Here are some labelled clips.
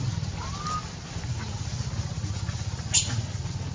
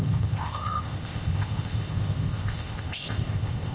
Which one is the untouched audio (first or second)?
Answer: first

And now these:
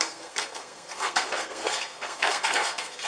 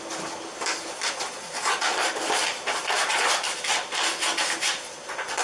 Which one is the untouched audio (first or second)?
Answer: second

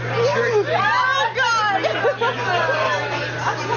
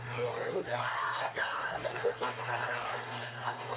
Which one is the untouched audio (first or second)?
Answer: first